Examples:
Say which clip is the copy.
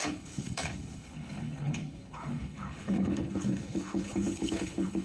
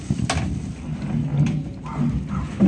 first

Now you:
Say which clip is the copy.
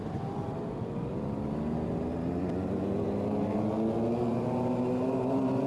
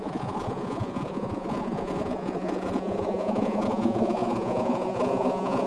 second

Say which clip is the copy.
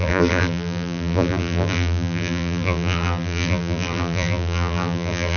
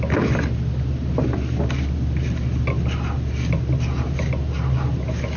first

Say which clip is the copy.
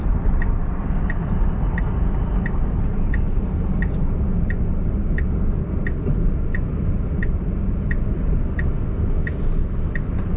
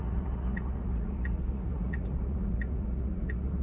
second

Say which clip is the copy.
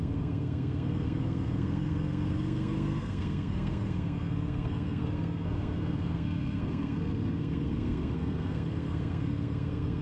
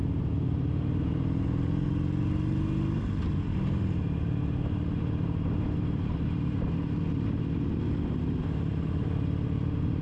first